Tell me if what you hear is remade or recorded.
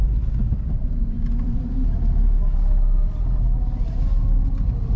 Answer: recorded